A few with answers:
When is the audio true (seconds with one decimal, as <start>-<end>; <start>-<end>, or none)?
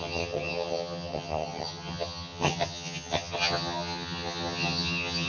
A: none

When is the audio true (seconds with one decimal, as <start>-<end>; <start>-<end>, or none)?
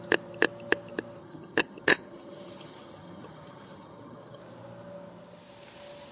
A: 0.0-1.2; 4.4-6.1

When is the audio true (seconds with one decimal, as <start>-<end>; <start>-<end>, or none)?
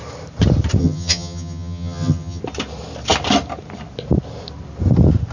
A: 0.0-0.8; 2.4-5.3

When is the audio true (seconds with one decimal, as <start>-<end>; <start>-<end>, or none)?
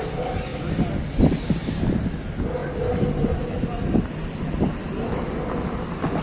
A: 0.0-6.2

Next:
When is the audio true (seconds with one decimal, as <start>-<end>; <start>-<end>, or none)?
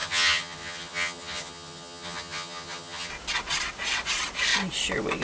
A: 3.1-5.2